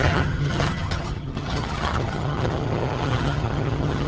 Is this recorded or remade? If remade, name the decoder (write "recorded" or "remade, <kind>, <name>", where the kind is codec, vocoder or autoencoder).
remade, vocoder, HiFi-GAN